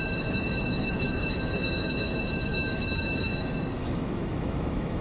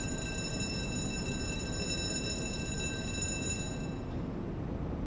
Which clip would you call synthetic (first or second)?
first